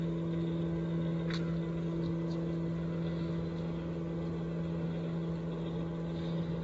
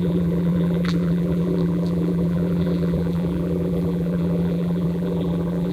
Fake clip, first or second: second